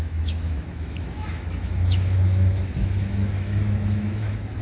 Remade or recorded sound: remade